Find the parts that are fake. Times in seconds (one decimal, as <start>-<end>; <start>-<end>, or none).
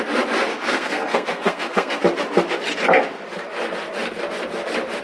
0.5-2.0